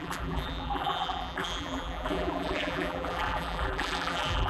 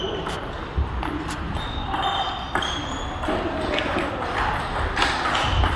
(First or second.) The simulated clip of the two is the first